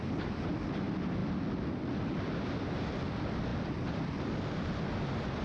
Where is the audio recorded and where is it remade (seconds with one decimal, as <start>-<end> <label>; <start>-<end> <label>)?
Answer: 0.0-5.4 recorded